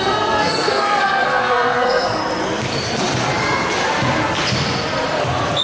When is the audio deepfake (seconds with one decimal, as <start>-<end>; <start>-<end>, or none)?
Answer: 0.0-2.2